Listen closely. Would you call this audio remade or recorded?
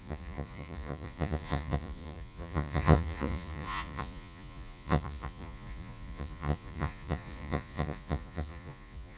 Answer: remade